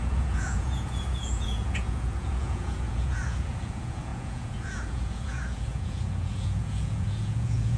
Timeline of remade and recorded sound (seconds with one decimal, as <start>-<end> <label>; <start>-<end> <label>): 0.0-7.8 remade